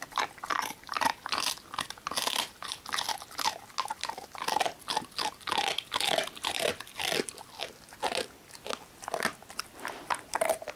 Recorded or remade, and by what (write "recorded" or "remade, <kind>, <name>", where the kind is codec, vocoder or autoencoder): recorded